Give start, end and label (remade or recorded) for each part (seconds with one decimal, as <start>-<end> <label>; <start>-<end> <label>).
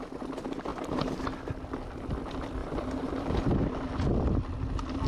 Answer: 0.0-0.7 recorded; 0.7-1.2 remade; 1.2-2.6 recorded; 2.6-3.5 remade; 3.5-5.1 recorded